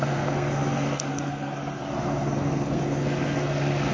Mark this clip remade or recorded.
remade